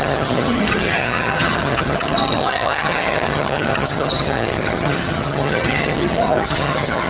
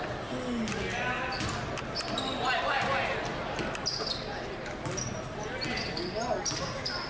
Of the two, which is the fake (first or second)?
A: first